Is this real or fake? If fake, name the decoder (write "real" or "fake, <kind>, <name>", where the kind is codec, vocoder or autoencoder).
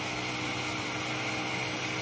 real